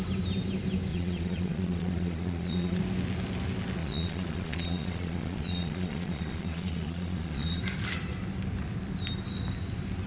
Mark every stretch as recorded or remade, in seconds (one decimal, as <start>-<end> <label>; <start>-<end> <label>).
0.0-0.9 recorded; 0.9-2.8 remade; 2.8-3.8 recorded; 3.8-7.6 remade; 7.6-10.1 recorded